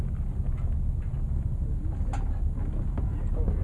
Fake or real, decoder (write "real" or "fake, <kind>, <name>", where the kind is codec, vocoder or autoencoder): real